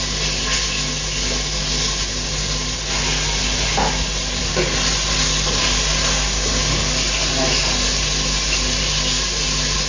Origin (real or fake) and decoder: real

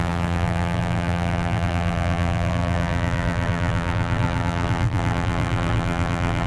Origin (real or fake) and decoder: fake, vocoder, BigVGAN v2